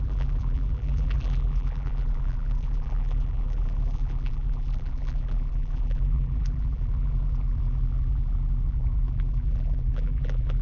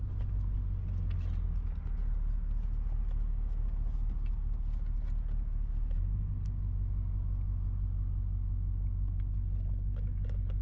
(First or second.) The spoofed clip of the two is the first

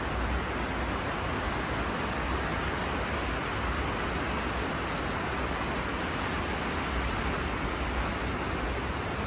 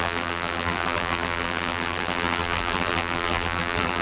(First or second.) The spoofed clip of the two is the second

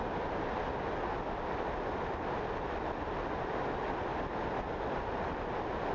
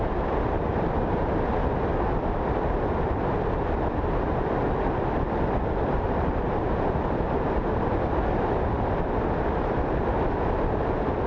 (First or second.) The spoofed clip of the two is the second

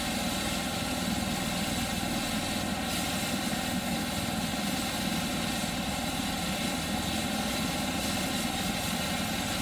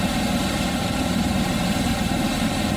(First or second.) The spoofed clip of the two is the second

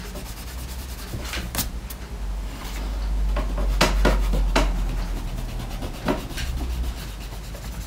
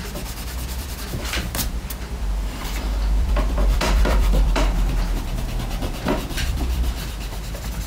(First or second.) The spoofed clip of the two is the second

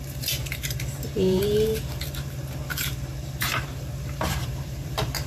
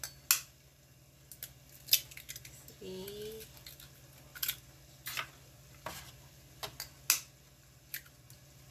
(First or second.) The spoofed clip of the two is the first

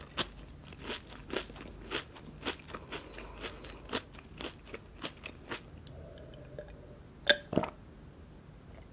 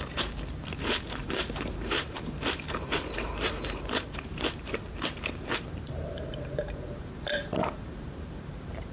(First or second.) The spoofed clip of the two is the second